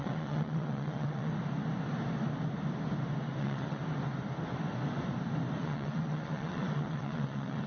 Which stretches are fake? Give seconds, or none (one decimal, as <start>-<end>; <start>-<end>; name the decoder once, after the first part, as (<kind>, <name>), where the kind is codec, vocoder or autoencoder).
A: 0.0-1.3 (vocoder, WaveNeXt); 3.4-3.8; 5.6-7.7